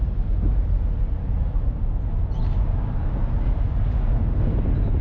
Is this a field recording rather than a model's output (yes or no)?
yes